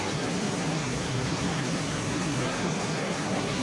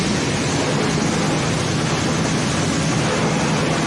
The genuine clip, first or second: second